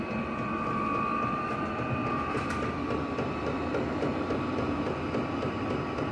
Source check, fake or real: real